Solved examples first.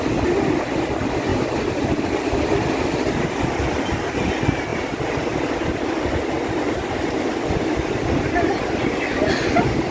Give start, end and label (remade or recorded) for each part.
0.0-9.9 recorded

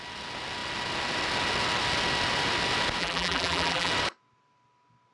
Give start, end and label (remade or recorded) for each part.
0.0-3.0 recorded; 3.0-3.9 remade; 3.9-5.1 recorded

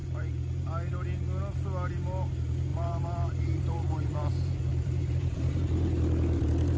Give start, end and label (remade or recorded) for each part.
0.0-2.7 recorded; 2.7-4.3 remade; 4.3-4.7 recorded; 4.7-5.5 remade; 5.5-6.8 recorded